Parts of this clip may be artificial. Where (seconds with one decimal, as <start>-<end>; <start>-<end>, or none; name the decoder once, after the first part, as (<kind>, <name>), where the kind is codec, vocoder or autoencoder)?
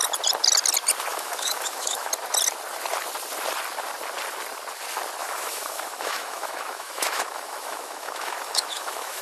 1.1-2.1 (autoencoder, DAC-VAE); 5.2-9.2